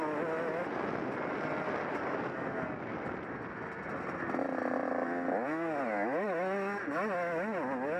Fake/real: real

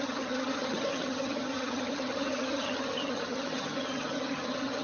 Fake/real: fake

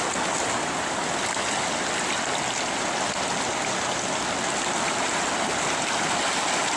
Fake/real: real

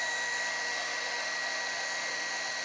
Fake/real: fake